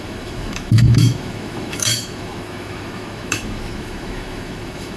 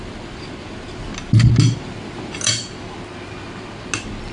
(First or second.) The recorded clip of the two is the second